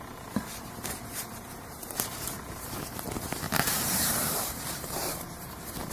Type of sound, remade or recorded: remade